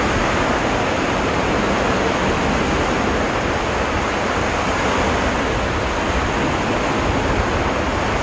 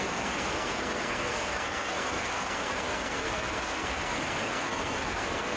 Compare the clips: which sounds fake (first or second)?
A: second